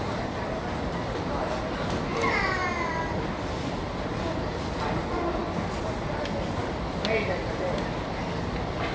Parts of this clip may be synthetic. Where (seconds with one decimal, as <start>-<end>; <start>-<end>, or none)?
none